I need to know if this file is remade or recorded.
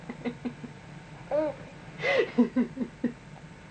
recorded